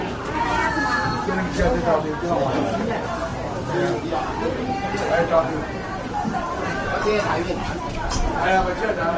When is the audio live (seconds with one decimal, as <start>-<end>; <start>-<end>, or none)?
0.0-3.3; 7.9-9.2